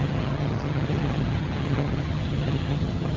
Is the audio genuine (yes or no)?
no